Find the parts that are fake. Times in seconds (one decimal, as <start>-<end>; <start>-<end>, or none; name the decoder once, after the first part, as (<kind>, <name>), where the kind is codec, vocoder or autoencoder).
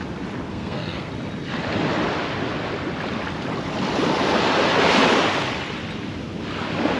0.5-1.1 (codec, SNAC)